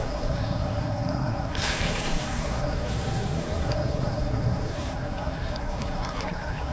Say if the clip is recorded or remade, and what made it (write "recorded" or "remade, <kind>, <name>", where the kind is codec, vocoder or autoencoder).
remade, codec, SNAC